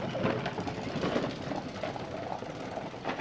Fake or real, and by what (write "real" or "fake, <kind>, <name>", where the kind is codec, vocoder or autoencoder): real